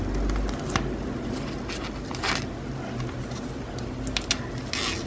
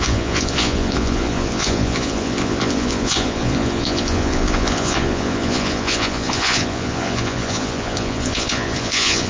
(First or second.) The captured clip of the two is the first